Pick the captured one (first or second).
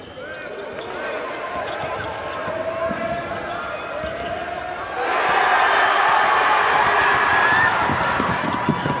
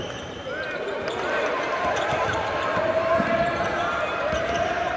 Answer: first